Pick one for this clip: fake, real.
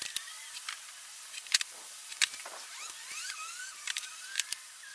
fake